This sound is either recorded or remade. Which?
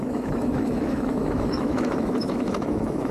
remade